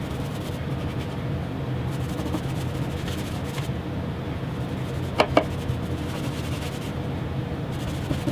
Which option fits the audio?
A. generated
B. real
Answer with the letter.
A